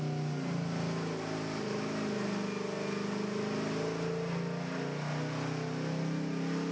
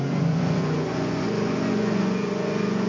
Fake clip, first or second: second